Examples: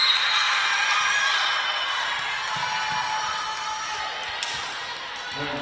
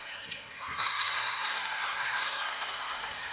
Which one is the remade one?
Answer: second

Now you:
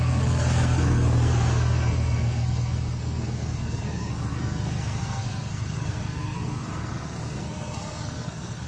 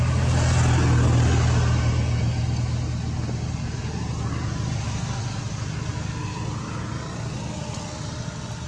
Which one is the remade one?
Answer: first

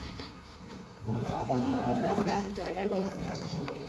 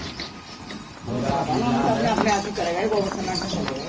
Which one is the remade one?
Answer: first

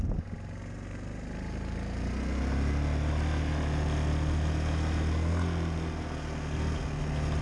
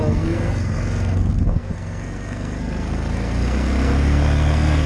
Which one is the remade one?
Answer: second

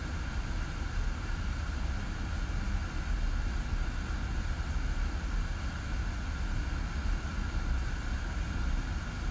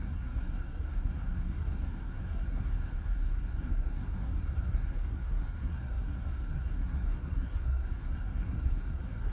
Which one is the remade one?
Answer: second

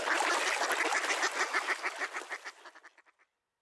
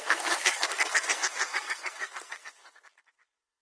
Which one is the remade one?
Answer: second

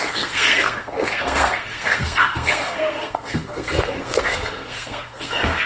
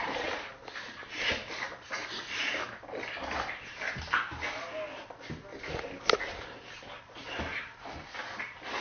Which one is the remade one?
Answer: first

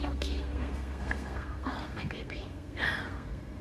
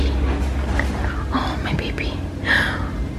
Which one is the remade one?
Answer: first